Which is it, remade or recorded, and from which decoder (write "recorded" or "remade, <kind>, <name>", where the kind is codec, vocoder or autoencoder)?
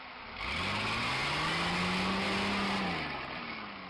recorded